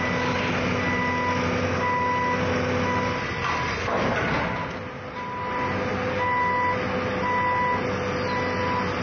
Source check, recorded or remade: recorded